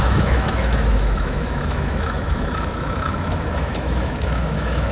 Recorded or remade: remade